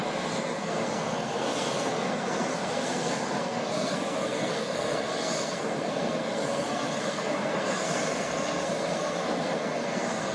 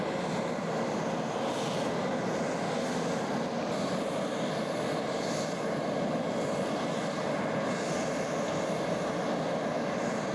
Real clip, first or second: second